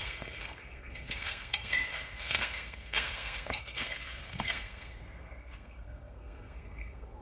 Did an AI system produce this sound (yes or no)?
yes